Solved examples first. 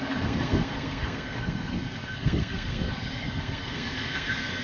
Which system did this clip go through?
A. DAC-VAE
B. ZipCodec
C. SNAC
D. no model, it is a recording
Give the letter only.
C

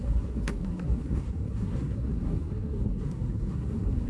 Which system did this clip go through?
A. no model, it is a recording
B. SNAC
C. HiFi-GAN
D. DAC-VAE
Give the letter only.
B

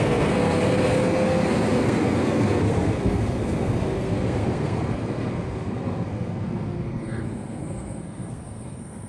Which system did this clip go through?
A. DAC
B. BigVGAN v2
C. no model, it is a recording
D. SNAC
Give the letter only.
D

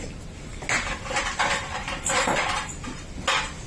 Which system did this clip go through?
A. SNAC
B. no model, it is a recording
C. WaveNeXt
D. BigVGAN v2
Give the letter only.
B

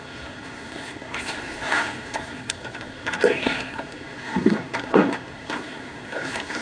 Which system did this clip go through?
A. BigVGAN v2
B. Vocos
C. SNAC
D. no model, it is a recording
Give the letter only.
C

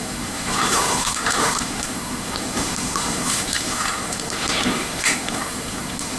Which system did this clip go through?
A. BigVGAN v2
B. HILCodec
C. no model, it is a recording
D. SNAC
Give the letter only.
D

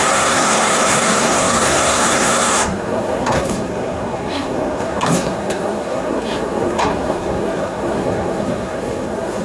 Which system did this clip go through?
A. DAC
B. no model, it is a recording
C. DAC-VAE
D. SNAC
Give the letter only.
D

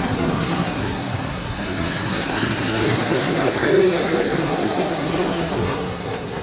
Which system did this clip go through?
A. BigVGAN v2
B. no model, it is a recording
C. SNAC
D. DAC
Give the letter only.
C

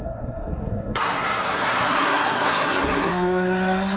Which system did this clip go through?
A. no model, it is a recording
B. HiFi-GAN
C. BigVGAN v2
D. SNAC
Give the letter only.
D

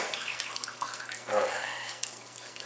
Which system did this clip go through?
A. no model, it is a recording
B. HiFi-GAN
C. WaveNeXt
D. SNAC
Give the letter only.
D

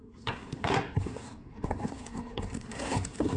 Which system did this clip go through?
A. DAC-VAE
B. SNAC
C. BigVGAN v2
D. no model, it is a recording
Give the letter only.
B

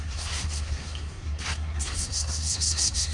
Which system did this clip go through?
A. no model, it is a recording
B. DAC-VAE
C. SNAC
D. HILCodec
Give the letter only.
C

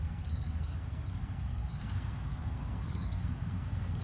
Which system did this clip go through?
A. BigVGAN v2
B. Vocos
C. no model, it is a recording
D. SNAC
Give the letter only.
D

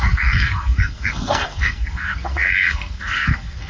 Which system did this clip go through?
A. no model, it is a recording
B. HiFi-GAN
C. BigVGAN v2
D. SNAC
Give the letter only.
D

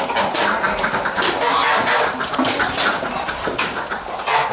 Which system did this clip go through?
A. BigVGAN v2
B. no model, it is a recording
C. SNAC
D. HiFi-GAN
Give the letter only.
B